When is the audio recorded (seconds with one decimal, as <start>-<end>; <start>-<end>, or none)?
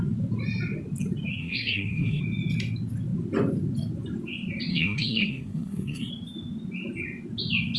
0.0-1.4; 2.2-4.7; 6.1-7.8